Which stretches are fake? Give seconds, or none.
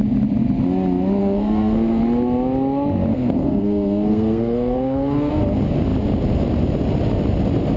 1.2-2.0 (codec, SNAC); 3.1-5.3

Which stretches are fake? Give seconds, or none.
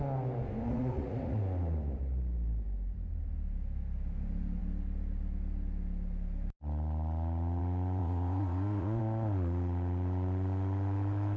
0.7-1.4 (vocoder, Vocos); 8.0-9.0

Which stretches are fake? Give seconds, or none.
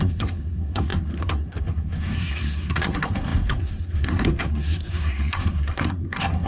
0.0-6.5 (codec, SNAC)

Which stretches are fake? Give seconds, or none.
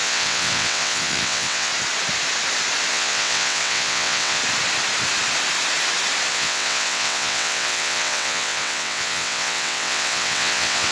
0.0-1.7 (vocoder, WaveNeXt); 2.9-4.4; 6.3-10.9